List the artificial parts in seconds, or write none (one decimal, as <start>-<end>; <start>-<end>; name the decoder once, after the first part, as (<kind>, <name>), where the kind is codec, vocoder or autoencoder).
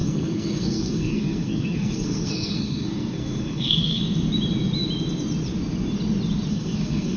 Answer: 0.0-4.0 (codec, SNAC); 6.5-7.2